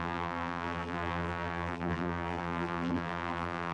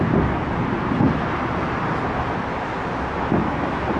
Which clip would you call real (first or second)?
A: second